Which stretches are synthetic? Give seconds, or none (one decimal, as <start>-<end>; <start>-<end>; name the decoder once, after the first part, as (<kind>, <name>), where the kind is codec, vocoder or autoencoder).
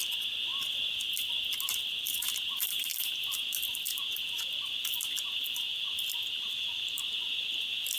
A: 0.0-0.5 (vocoder, BigVGAN v2); 1.9-2.9